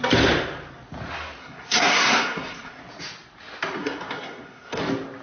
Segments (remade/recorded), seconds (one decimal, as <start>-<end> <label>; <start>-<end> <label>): 0.0-1.4 recorded; 1.4-2.8 remade; 2.8-3.8 recorded; 3.8-4.8 remade; 4.8-5.2 recorded